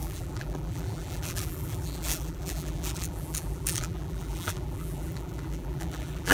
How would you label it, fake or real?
fake